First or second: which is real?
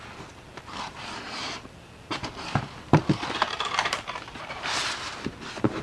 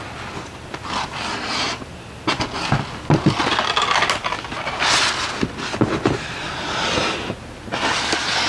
second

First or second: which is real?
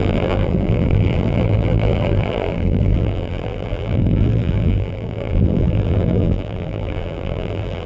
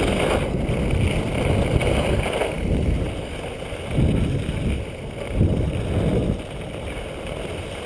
second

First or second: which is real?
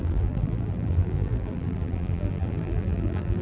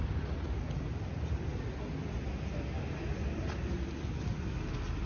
second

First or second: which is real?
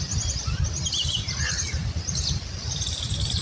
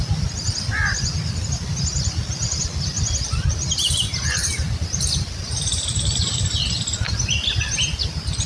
second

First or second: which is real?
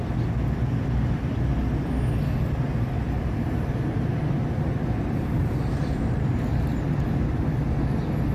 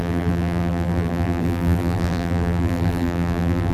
first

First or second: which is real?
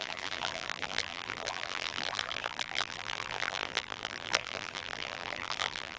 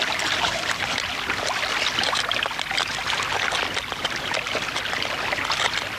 second